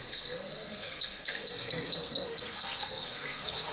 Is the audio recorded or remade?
remade